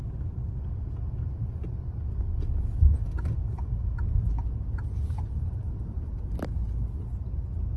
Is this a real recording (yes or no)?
yes